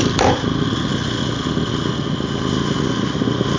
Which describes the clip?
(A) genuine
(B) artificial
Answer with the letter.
A